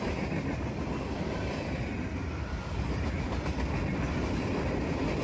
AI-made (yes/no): no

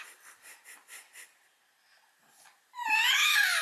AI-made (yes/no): yes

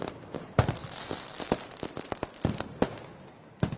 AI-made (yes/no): no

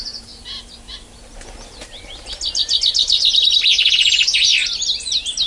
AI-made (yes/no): no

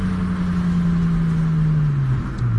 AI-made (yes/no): no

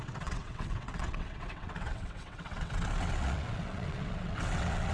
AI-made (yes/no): yes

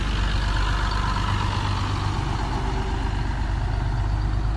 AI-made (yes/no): no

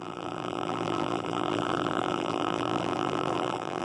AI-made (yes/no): yes